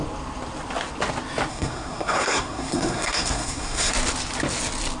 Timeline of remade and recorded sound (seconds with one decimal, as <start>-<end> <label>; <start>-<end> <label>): 0.0-1.5 recorded; 1.5-3.9 remade; 3.9-5.0 recorded